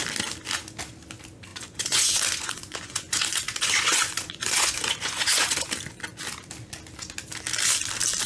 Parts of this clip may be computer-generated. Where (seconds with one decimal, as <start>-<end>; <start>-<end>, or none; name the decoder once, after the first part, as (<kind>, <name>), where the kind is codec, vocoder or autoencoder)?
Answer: 1.5-5.7 (vocoder, Vocos)

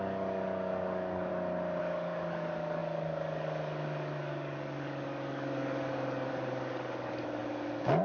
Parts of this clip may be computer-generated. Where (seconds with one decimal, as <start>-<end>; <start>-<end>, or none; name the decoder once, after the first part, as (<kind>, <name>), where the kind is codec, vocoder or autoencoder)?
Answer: 0.0-1.3 (codec, DAC); 1.8-8.0

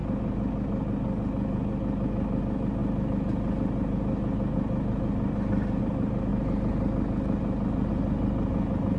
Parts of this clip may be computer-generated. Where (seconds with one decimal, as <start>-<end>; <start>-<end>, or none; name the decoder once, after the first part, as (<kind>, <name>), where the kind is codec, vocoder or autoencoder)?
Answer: none

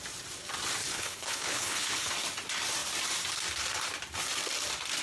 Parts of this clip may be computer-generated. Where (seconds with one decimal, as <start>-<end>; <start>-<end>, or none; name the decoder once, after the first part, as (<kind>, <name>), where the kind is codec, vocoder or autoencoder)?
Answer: 0.8-2.1 (codec, HILCodec)

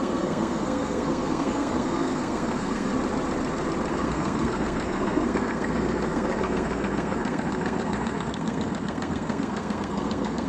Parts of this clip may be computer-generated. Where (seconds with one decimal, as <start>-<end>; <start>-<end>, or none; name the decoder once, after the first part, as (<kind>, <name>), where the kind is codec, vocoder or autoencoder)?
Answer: 0.0-2.9 (codec, SNAC); 3.9-10.5

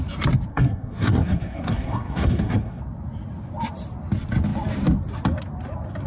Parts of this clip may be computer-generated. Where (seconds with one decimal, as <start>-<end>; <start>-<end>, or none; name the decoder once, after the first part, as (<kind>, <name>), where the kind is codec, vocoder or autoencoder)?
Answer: 0.5-2.8 (codec, SNAC)

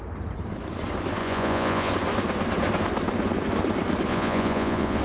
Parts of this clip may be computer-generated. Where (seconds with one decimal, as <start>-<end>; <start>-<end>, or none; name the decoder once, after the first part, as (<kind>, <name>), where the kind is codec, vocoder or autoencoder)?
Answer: 1.2-1.9 (vocoder, Vocos); 4.1-5.0